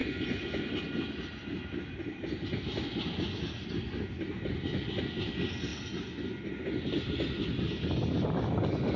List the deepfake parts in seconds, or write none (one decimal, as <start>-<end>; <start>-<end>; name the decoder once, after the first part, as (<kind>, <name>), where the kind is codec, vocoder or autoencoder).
none